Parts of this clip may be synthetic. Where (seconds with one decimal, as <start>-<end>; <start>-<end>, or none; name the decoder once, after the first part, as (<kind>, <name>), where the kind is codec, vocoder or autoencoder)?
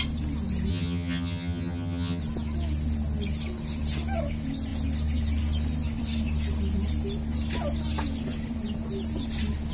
0.7-2.2 (vocoder, HiFi-GAN)